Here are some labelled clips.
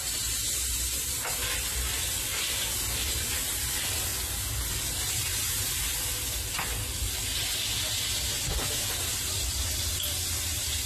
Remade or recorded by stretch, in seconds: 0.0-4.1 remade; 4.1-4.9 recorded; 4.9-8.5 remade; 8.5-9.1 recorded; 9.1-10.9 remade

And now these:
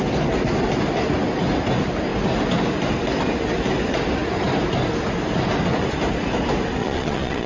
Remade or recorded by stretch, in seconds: 0.0-6.8 recorded; 6.8-7.5 remade

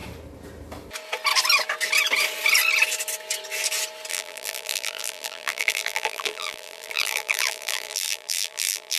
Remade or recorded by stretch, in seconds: 0.0-4.1 recorded; 4.1-9.0 remade

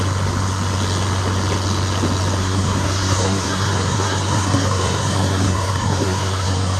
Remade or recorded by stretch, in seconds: 0.0-2.4 recorded; 2.4-6.8 remade

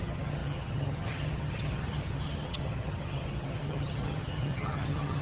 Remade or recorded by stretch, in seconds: 0.0-5.2 remade

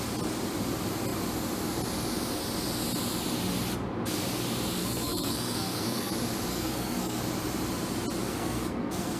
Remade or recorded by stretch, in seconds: 0.0-4.8 recorded; 4.8-6.1 remade; 6.1-6.5 recorded; 6.5-7.2 remade; 7.2-8.2 recorded; 8.2-9.2 remade

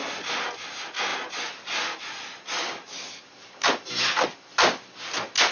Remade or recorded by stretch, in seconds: 0.0-5.5 recorded